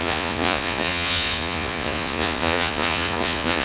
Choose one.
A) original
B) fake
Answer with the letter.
B